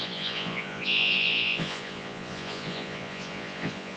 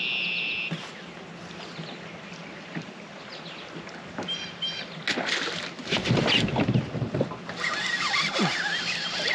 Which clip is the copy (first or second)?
first